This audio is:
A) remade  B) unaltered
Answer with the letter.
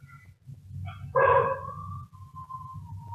B